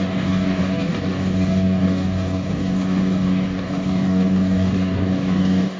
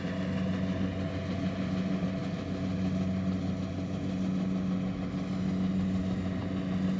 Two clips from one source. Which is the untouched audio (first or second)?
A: second